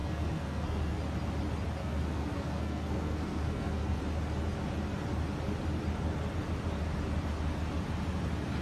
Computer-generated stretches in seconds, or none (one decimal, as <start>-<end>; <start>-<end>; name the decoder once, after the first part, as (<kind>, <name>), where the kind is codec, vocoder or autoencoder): 0.0-1.0 (codec, SNAC); 1.8-4.0